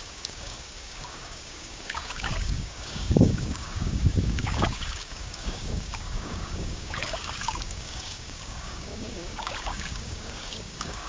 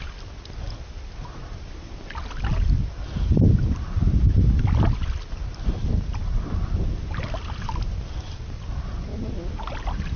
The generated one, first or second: first